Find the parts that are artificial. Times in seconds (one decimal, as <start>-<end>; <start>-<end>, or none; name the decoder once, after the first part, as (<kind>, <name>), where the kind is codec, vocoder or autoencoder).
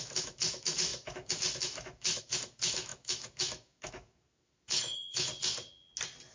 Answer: 0.0-5.3 (autoencoder, DAC-VAE)